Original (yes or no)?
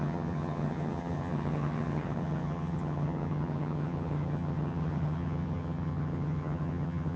no